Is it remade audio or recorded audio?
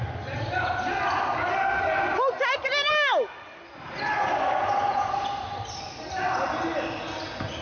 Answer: recorded